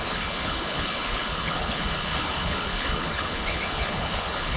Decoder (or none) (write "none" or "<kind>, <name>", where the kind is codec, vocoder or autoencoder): codec, HILCodec